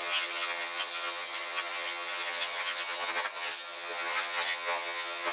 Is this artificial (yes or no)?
yes